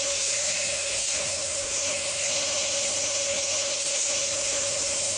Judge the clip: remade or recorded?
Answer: remade